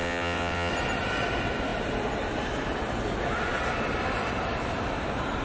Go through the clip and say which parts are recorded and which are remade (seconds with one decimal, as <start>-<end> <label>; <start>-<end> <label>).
0.0-0.7 remade; 0.7-5.4 recorded